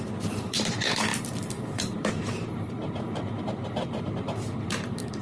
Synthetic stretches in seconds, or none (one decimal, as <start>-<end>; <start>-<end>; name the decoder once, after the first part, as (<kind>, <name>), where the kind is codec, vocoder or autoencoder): 0.0-5.2 (vocoder, BigVGAN v2)